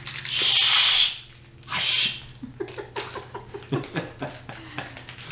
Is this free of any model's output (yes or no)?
yes